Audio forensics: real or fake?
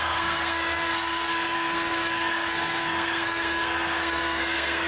fake